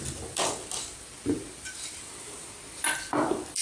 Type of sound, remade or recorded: recorded